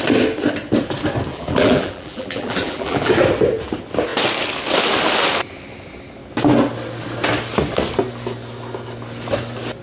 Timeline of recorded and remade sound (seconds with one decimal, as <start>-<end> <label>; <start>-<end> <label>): 0.0-1.3 recorded; 1.3-3.1 remade; 3.1-9.8 recorded